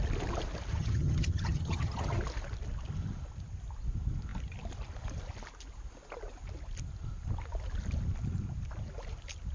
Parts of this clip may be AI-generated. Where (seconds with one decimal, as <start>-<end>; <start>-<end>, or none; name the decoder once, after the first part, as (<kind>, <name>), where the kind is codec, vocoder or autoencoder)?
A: 0.7-2.2 (vocoder, HiFi-GAN)